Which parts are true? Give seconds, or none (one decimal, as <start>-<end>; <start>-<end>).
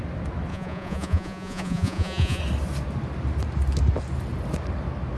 0.0-0.5; 2.4-5.2